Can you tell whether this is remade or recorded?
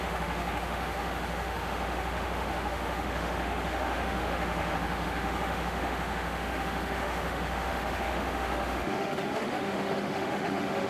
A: remade